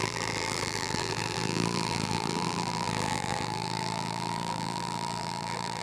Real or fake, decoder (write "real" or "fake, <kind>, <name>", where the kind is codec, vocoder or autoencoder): fake, vocoder, BigVGAN v2